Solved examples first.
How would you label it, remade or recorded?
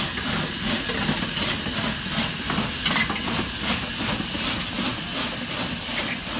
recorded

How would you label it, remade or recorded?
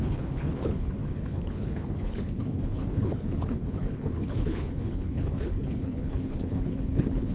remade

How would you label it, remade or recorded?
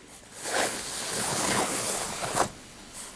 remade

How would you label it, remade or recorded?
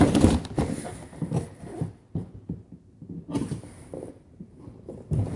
recorded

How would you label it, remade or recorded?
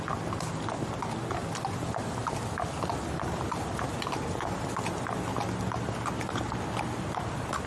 recorded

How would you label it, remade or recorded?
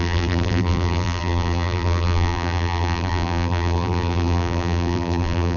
remade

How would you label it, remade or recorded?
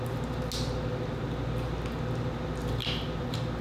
recorded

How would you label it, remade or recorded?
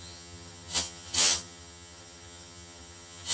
remade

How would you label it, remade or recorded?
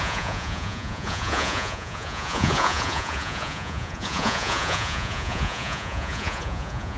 remade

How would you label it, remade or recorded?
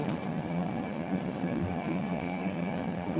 remade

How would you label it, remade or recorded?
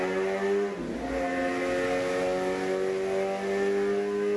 recorded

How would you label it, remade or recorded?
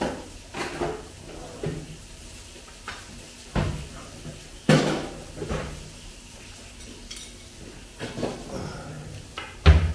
recorded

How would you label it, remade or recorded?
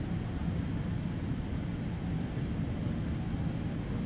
recorded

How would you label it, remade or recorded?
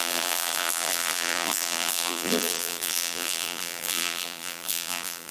remade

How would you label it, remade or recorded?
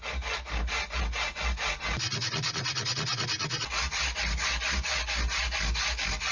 recorded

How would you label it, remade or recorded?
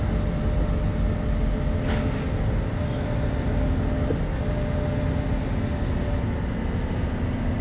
recorded